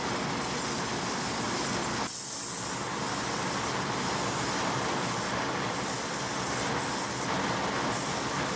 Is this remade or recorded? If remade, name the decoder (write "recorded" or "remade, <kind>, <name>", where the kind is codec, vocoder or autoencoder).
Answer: recorded